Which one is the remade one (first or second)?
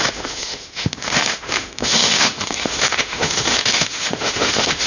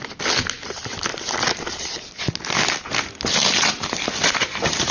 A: first